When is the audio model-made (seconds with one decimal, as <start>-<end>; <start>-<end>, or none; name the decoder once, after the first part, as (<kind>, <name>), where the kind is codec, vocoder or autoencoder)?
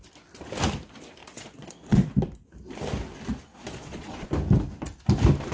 1.2-2.1 (vocoder, Vocos); 3.5-4.3